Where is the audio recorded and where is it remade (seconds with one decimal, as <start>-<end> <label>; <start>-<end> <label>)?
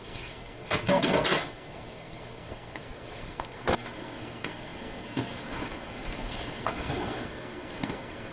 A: 0.0-8.3 remade